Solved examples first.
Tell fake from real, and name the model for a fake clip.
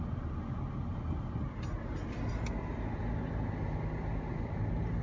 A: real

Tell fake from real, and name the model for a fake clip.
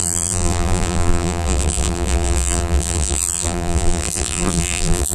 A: fake, vocoder, BigVGAN v2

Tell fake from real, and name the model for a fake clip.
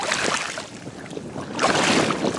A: real